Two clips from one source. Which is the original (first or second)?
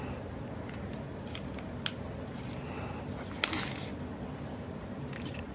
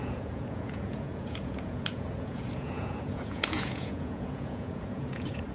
first